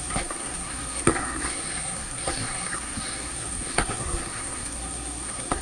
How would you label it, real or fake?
fake